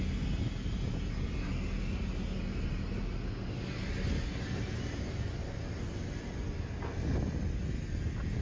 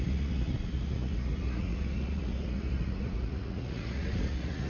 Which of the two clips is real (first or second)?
first